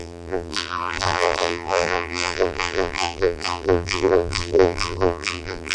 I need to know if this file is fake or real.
fake